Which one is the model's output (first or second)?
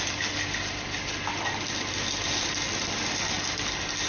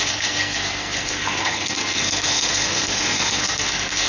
second